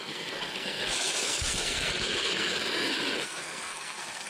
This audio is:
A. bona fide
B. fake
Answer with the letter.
B